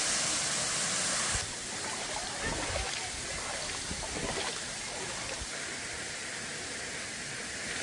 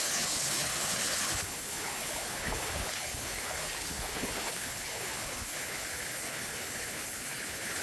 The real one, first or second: first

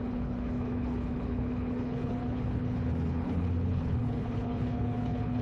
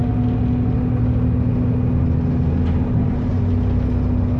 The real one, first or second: second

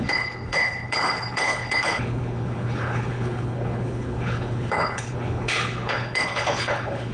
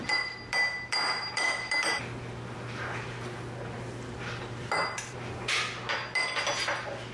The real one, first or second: second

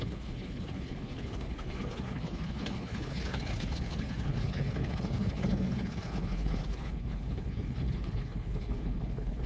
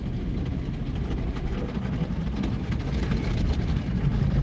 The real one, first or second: second